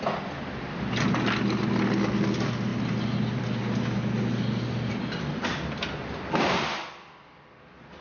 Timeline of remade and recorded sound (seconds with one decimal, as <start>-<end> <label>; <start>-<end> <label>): 0.0-8.0 recorded